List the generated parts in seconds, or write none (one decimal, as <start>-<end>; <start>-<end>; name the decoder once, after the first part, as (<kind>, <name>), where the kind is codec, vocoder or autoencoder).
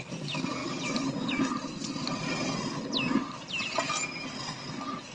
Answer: none